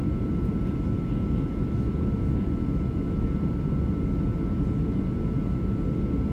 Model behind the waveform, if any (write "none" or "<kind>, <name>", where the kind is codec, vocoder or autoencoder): none